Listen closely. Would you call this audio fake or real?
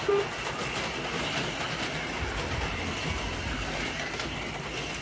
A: real